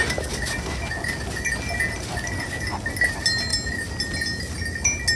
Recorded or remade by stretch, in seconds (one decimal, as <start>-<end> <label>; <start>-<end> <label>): 0.0-5.2 recorded